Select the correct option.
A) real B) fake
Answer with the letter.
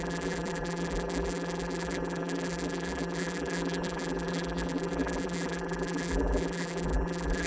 B